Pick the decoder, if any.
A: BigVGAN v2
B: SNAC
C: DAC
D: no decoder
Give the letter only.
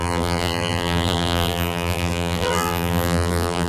A